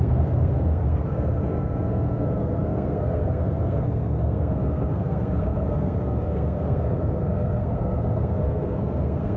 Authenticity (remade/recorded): remade